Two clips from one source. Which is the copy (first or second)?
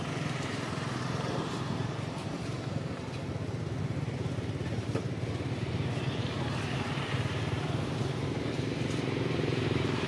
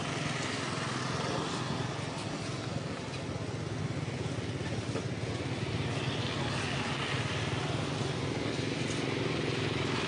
first